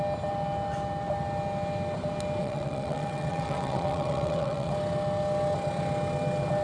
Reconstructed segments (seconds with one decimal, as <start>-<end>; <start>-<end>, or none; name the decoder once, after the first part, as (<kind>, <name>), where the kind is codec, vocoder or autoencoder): 2.4-4.7 (vocoder, WaveNeXt)